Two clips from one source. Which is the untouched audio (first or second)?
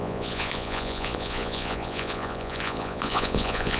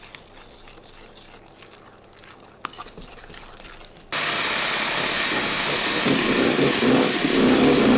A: second